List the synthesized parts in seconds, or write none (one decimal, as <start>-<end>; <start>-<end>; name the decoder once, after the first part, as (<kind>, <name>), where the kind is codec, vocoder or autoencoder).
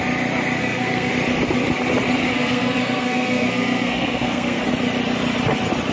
0.6-1.1 (codec, SNAC); 2.2-4.6